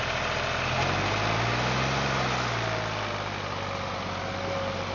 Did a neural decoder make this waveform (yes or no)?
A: no